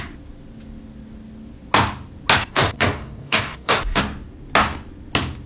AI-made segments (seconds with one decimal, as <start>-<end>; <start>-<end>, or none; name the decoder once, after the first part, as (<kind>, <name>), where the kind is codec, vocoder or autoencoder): 2.5-4.0 (codec, DAC)